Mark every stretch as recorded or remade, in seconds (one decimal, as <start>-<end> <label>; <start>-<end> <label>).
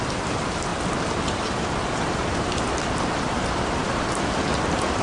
0.0-5.0 recorded